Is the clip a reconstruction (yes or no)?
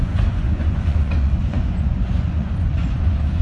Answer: yes